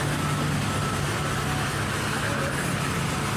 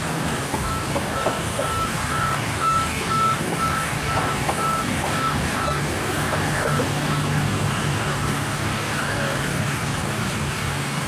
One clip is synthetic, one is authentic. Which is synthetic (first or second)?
second